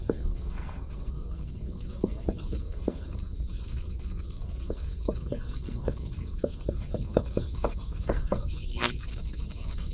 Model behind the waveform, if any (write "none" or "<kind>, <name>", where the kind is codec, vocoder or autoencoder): codec, SNAC